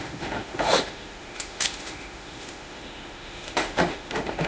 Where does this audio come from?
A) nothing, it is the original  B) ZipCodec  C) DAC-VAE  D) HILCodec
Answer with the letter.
C